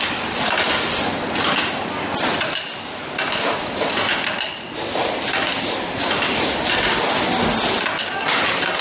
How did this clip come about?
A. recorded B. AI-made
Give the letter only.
A